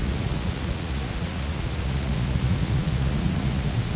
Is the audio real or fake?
fake